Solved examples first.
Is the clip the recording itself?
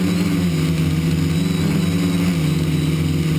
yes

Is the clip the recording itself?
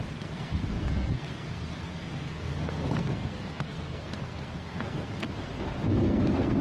no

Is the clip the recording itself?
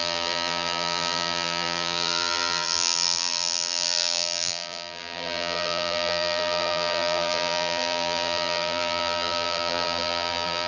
no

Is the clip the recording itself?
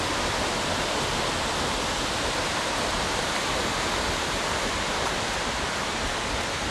yes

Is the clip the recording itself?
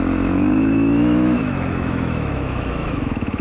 no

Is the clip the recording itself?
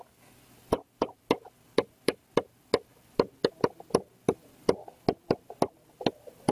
yes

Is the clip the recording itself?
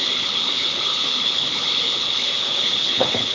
no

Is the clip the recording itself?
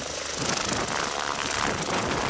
yes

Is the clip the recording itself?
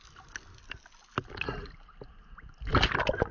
yes